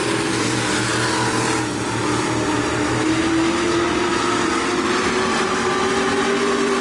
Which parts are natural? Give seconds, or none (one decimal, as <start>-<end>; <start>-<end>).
0.0-6.8